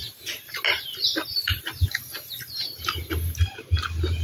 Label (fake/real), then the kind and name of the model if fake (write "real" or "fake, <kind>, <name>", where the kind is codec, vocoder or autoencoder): real